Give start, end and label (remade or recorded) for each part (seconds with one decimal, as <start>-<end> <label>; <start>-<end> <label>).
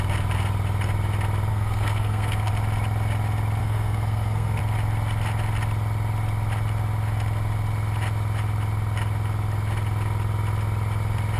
0.0-1.5 recorded; 1.5-2.5 remade; 2.5-3.6 recorded; 3.6-4.6 remade; 4.6-11.4 recorded